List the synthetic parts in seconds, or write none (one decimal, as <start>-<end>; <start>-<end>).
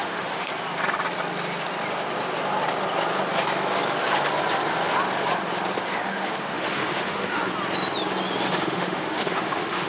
0.0-0.5; 5.8-7.5; 8.5-9.9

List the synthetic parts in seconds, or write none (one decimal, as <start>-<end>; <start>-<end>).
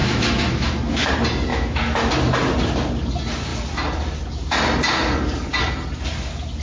0.0-1.1; 1.5-2.1